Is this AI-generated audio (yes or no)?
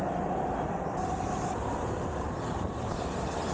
yes